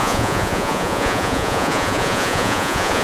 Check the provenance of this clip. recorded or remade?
remade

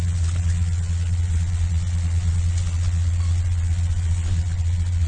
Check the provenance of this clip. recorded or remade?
remade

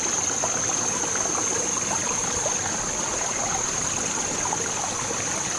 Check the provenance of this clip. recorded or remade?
recorded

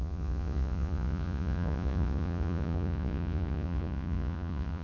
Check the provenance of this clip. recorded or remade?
remade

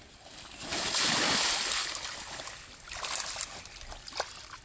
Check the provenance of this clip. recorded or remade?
recorded